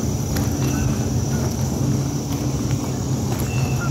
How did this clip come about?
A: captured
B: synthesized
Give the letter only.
A